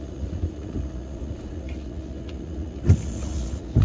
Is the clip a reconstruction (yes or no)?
yes